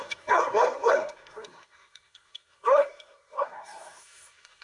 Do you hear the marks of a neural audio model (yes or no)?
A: yes